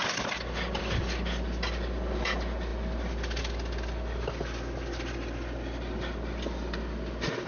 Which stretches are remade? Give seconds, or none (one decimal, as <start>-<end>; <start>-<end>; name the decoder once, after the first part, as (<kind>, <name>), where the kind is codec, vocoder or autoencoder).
none